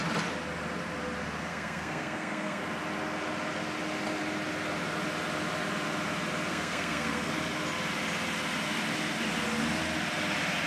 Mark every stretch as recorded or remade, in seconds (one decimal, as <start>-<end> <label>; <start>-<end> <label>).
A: 0.0-1.5 recorded; 1.5-2.6 remade; 2.6-6.5 recorded; 6.5-7.3 remade; 7.3-10.7 recorded